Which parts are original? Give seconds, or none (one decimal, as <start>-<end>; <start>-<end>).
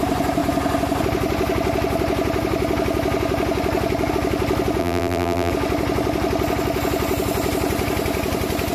0.0-4.8; 5.5-8.7